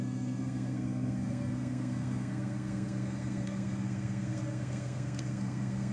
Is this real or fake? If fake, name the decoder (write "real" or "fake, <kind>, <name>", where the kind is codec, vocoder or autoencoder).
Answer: fake, codec, SNAC